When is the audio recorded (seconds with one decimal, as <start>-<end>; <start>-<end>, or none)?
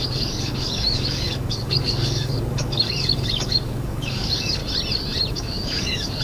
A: 4.6-5.3